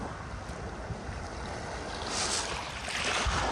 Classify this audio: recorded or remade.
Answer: recorded